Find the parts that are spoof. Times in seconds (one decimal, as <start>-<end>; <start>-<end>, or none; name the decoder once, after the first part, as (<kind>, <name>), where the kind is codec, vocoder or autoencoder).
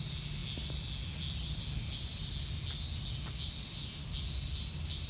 none